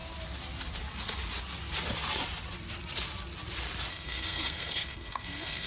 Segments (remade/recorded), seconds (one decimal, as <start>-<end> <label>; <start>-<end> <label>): 0.0-3.9 recorded; 3.9-5.7 remade